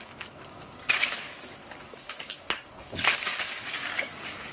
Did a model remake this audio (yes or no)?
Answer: yes